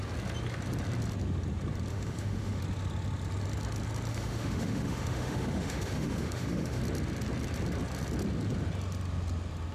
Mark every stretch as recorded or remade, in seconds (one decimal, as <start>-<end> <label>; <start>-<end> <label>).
0.0-1.9 recorded; 1.9-2.6 remade; 2.6-4.1 recorded; 4.1-6.8 remade; 6.8-9.7 recorded